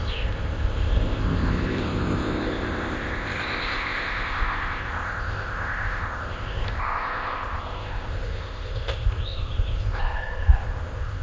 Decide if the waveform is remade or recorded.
remade